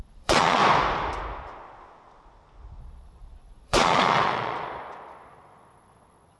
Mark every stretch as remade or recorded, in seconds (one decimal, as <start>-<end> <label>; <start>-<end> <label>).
0.0-0.6 remade; 0.6-2.8 recorded; 2.8-6.4 remade